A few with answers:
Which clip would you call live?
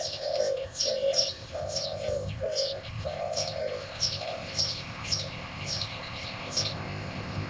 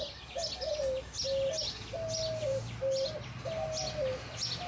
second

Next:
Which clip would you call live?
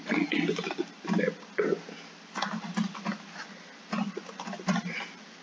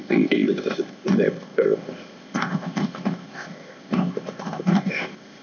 first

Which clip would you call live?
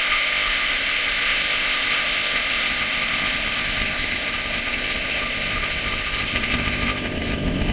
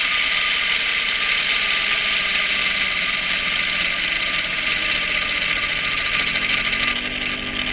second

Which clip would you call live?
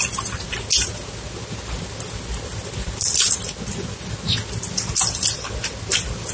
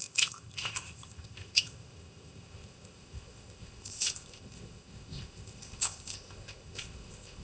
first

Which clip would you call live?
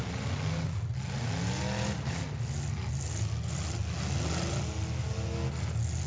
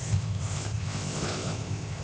first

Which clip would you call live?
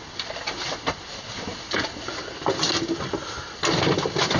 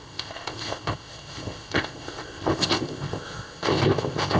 first